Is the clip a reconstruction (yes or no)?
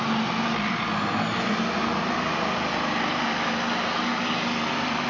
no